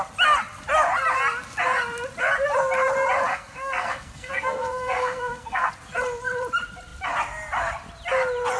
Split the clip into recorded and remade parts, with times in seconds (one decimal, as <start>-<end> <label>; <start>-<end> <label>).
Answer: 0.0-3.3 recorded; 3.3-5.7 remade; 5.7-8.6 recorded